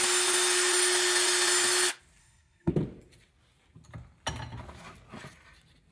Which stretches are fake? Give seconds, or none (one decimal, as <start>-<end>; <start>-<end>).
2.2-2.7